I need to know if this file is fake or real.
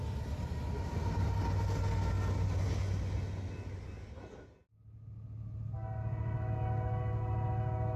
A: real